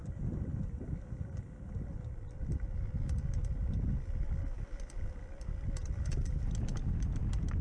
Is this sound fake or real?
real